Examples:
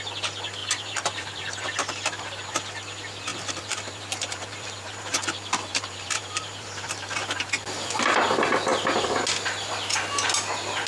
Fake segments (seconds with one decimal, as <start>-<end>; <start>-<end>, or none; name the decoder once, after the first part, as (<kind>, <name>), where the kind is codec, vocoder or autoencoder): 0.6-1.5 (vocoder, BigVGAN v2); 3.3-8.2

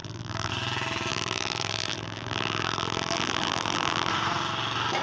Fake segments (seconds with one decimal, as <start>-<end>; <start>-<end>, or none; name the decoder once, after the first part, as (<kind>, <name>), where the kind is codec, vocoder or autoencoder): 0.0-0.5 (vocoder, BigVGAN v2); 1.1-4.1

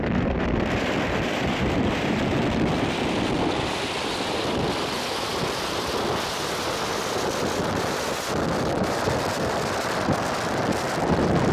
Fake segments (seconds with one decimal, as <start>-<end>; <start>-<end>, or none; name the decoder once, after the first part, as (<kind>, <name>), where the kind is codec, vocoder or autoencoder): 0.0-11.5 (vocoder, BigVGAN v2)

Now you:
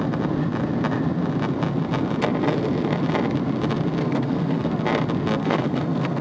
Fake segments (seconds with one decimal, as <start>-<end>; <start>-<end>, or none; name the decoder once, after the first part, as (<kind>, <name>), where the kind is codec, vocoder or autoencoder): 4.0-4.7 (codec, SNAC); 5.4-6.2

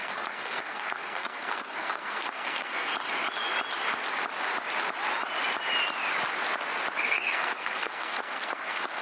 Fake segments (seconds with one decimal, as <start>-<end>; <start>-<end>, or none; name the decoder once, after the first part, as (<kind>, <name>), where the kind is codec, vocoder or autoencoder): 0.0-2.9 (codec, SNAC); 7.0-9.0

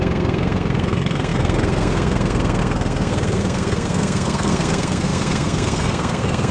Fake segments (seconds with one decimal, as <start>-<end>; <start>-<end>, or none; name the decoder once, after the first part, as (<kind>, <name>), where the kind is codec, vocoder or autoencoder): 0.0-6.5 (codec, SNAC)

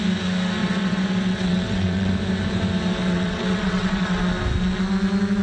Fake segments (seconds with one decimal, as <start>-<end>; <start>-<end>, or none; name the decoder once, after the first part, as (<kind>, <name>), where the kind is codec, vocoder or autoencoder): 0.6-2.1 (vocoder, WaveNeXt); 3.0-4.2

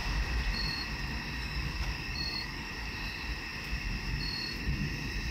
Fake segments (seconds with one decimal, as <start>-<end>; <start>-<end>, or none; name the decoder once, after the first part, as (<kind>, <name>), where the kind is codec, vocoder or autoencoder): 1.4-2.7 (codec, DAC)